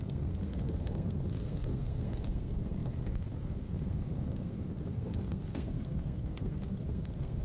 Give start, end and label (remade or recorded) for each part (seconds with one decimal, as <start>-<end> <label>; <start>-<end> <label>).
0.0-7.4 remade